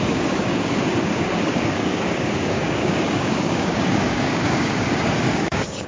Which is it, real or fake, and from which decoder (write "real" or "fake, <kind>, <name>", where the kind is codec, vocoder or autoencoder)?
fake, codec, DAC